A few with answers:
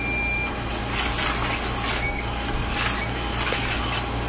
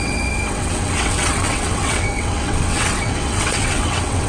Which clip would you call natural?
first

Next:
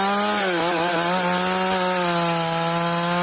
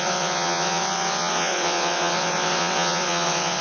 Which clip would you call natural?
first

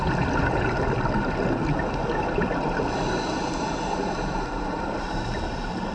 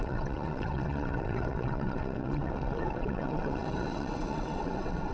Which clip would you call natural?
first